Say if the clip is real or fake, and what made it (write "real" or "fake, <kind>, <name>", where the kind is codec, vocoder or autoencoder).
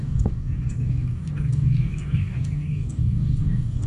fake, codec, DAC